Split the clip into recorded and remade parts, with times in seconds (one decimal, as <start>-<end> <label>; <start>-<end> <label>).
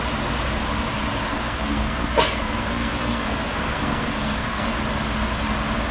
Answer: 0.0-1.3 recorded; 1.3-4.8 remade; 4.8-5.9 recorded